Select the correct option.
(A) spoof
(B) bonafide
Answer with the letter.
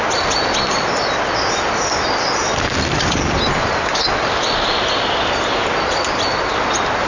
B